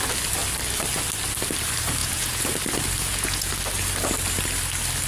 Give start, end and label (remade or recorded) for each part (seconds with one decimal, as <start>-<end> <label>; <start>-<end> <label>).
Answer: 0.0-2.0 recorded; 2.0-2.5 remade; 2.5-3.0 recorded; 3.0-3.5 remade; 3.5-5.1 recorded